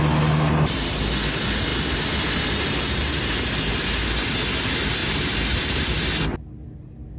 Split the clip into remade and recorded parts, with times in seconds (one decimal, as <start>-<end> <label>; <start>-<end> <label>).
0.0-5.0 recorded; 5.0-5.6 remade; 5.6-7.2 recorded